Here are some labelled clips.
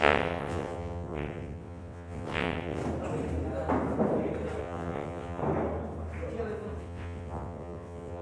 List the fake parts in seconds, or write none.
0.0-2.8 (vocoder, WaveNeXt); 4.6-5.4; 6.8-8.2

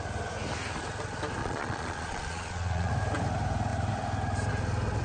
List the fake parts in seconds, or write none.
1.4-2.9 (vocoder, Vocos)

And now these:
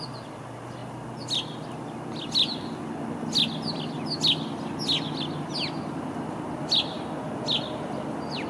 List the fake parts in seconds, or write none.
none